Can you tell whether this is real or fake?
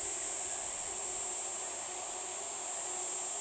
real